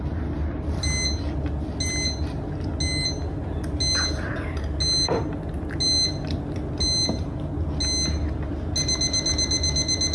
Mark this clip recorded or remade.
recorded